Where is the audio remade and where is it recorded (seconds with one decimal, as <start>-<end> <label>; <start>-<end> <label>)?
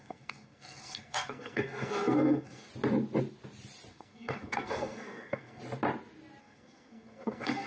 0.0-2.7 remade; 2.7-3.9 recorded; 3.9-5.6 remade; 5.6-6.4 recorded; 6.4-7.7 remade